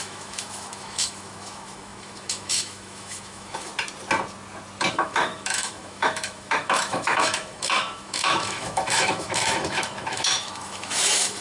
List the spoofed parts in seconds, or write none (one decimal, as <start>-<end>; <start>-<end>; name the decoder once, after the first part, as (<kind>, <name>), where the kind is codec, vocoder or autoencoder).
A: 0.0-3.7 (autoencoder, DAC-VAE); 4.9-11.4